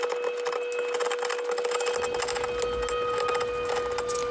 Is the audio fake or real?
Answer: real